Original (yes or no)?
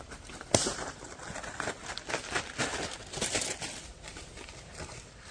yes